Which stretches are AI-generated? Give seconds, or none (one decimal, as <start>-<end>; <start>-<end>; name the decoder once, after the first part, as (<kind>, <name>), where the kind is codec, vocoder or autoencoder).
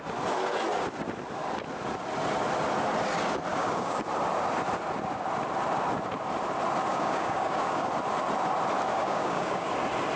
3.5-4.0 (codec, DAC); 6.9-7.9; 8.9-9.7